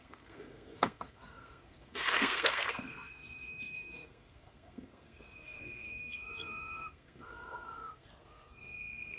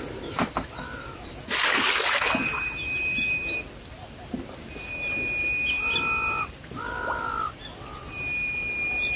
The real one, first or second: second